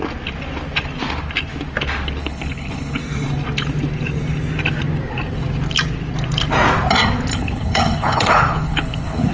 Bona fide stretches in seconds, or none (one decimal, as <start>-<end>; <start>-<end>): 0.0-2.2; 3.0-7.3